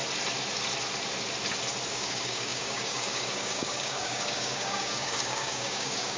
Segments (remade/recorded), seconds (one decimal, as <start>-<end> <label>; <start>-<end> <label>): 0.0-1.9 recorded; 1.9-6.2 remade

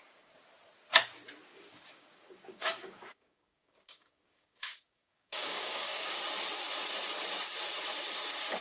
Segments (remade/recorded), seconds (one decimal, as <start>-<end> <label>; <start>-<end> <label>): 0.0-1.5 recorded; 1.5-6.2 remade; 6.2-8.6 recorded

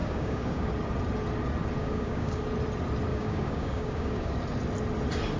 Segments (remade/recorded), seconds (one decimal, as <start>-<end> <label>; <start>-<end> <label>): 0.0-0.7 remade; 0.7-1.8 recorded; 1.8-2.4 remade; 2.4-3.1 recorded; 3.1-4.3 remade; 4.3-5.4 recorded

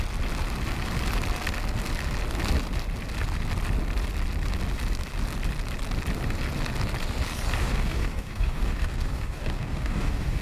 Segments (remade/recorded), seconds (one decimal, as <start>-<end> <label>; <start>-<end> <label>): 0.0-7.6 recorded; 7.6-10.4 remade

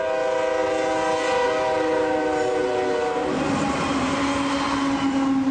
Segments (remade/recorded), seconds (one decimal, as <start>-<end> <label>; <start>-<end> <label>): 0.0-5.5 recorded

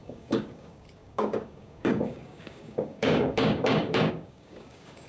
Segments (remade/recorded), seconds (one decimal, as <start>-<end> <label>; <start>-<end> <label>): 0.0-5.1 remade